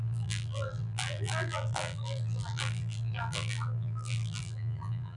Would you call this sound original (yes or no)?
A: no